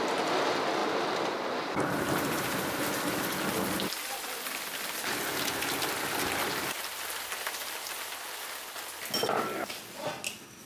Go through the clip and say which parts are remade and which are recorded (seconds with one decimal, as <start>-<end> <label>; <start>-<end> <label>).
0.0-0.8 recorded; 0.8-3.3 remade; 3.3-10.7 recorded